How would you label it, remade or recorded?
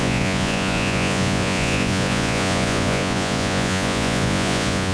remade